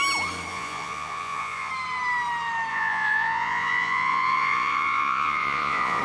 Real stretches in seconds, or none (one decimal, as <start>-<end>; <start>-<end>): 0.0-0.5; 1.7-2.7